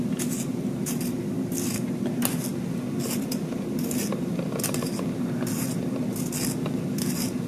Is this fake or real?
real